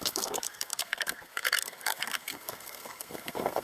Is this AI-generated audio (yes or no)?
yes